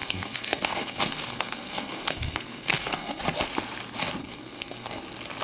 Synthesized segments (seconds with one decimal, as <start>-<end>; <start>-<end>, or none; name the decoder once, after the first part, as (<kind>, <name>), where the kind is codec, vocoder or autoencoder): 0.0-3.2 (codec, SNAC); 4.2-5.0